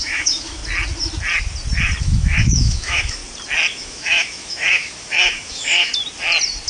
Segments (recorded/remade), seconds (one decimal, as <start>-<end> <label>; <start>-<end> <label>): 0.0-0.6 remade; 0.6-2.0 recorded; 2.0-3.2 remade; 3.2-3.7 recorded; 3.7-5.9 remade; 5.9-6.7 recorded